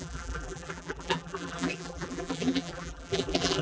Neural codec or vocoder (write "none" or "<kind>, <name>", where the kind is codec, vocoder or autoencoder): vocoder, BigVGAN v2